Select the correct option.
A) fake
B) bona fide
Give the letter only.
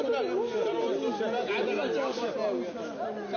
B